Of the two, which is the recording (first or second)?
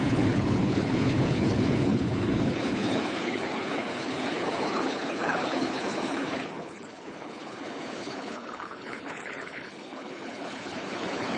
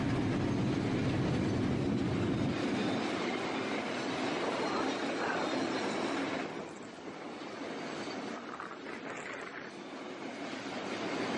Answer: second